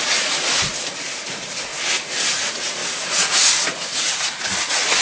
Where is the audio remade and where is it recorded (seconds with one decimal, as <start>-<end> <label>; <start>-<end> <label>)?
0.0-0.7 remade; 0.7-1.2 recorded; 1.2-1.7 remade; 1.7-2.3 recorded; 2.3-5.0 remade

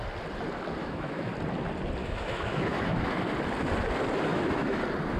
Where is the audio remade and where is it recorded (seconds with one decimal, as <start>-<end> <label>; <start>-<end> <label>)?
0.0-0.8 recorded; 0.8-1.3 remade; 1.3-2.0 recorded; 2.0-3.2 remade; 3.2-4.3 recorded; 4.3-4.8 remade; 4.8-5.2 recorded